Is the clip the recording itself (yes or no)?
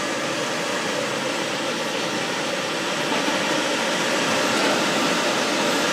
no